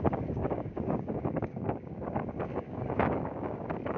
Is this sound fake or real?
fake